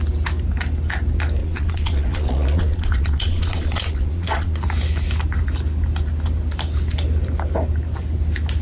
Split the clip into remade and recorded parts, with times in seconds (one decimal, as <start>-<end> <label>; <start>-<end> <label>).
0.0-1.4 recorded; 1.4-4.6 remade; 4.6-8.6 recorded